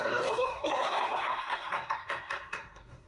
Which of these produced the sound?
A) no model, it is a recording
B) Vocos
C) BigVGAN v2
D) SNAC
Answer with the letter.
D